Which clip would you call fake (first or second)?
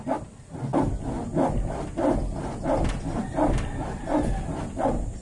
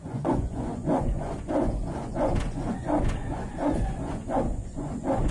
second